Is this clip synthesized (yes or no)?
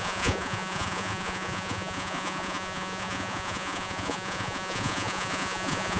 yes